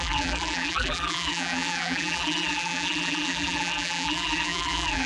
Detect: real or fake fake